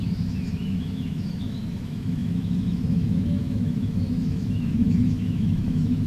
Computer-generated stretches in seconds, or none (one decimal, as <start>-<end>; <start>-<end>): 0.0-6.1